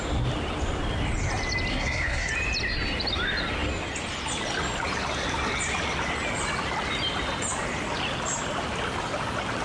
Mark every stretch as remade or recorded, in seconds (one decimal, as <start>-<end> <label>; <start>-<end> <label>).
0.0-1.7 recorded; 1.7-2.3 remade; 2.3-9.6 recorded